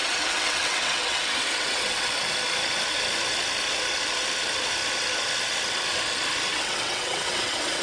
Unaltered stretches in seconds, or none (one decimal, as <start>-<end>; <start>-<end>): 2.1-6.5